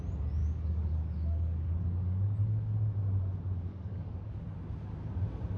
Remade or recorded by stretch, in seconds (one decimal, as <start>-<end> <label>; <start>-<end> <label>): 0.0-0.4 recorded; 0.4-2.7 remade; 2.7-3.7 recorded; 3.7-4.4 remade; 4.4-5.6 recorded

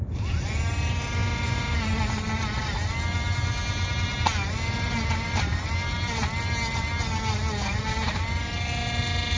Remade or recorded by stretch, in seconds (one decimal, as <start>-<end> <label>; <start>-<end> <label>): 0.0-9.4 recorded

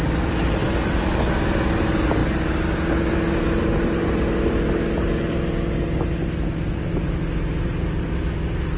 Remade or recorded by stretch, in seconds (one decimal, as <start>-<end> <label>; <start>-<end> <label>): 0.0-8.8 recorded

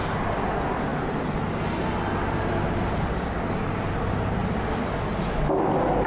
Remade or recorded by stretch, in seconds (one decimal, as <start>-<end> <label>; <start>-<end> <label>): 0.0-6.1 recorded

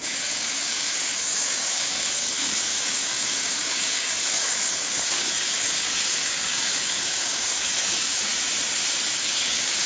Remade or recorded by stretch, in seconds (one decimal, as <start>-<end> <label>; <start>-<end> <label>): 0.0-8.3 remade; 8.3-9.2 recorded; 9.2-9.9 remade